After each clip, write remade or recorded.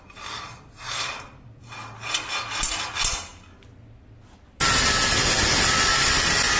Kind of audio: recorded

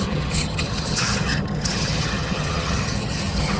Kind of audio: remade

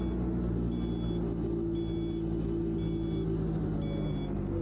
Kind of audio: recorded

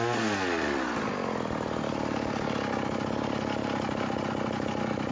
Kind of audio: recorded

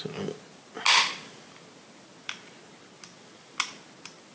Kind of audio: recorded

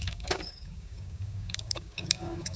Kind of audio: remade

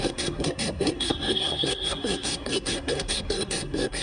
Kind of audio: remade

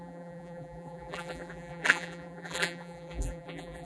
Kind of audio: remade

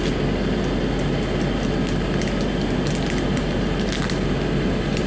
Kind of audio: recorded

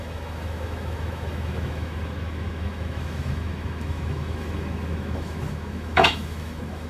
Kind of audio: remade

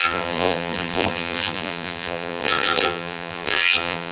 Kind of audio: remade